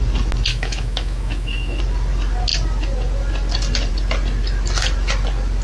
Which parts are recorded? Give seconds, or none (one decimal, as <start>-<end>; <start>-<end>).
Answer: 0.0-0.5; 1.8-5.6